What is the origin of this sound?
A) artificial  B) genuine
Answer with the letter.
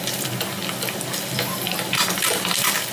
B